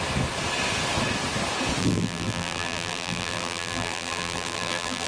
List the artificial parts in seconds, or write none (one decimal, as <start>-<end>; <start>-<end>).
1.8-5.1

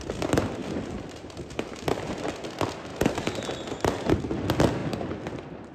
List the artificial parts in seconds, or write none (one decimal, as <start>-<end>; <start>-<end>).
0.6-1.6; 2.9-4.1

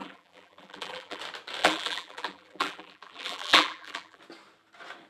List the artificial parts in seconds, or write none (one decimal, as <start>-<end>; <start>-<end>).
0.0-1.2; 1.6-4.2

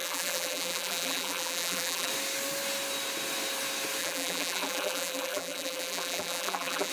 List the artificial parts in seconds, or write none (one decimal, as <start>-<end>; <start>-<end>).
0.0-2.1; 4.0-6.9

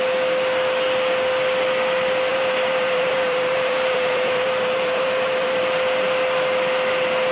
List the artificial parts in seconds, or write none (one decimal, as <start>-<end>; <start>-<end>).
2.3-5.6

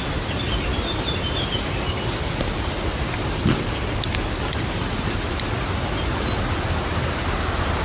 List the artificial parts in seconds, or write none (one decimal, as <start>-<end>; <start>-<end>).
none

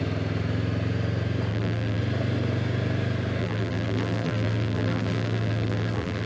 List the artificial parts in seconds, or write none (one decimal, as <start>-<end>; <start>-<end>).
1.5-2.0; 3.4-6.3

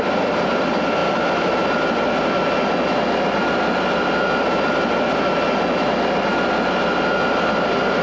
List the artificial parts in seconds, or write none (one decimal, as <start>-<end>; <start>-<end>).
none